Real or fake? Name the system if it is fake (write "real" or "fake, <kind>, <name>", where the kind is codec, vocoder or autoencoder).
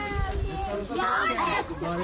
real